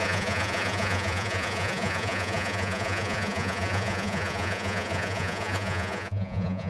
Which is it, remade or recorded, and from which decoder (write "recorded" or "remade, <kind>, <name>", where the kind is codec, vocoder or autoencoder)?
remade, vocoder, Vocos